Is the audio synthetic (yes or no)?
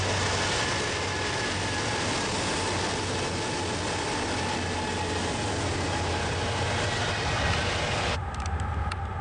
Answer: no